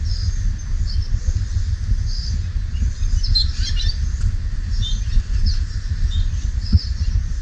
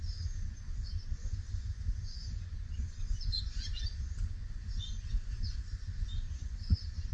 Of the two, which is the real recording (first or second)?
first